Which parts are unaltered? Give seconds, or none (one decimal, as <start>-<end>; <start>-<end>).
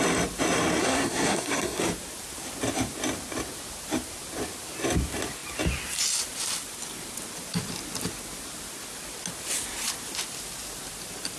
0.0-0.8; 1.8-11.4